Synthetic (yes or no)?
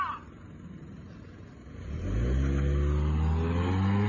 no